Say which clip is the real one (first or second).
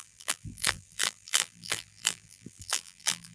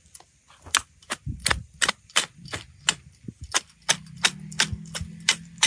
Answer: second